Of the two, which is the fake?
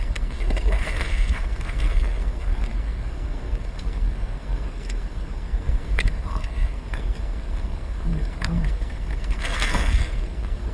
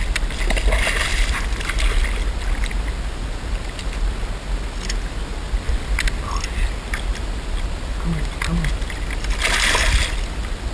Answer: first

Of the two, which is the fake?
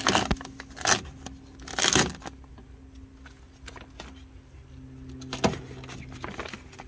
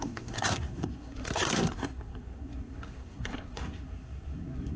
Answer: second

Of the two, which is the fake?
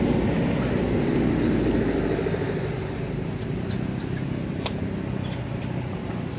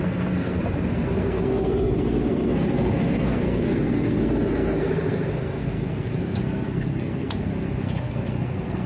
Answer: second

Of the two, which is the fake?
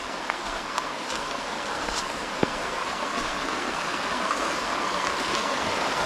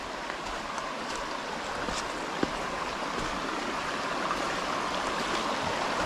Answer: first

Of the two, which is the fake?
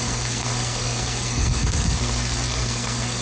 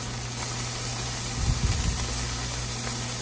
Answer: first